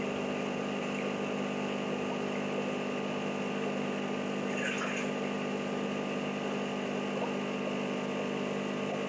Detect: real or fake real